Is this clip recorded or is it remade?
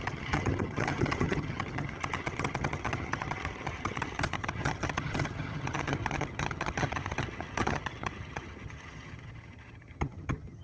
remade